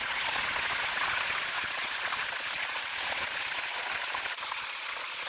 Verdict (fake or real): fake